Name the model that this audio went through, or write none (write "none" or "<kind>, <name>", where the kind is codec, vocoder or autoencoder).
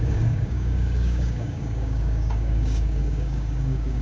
codec, DAC